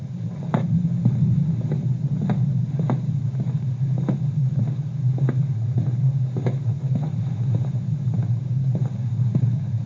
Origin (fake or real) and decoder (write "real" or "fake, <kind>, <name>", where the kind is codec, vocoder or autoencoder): real